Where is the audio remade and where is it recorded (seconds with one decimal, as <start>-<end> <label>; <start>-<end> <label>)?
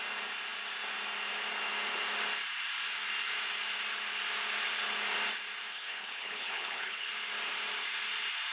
0.0-5.7 recorded; 5.7-7.1 remade; 7.1-8.5 recorded